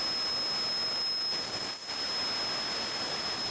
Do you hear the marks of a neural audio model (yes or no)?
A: no